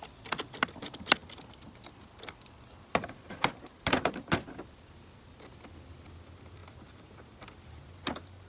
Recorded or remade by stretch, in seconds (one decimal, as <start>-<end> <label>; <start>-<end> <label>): 0.0-6.6 recorded; 6.6-7.8 remade; 7.8-8.5 recorded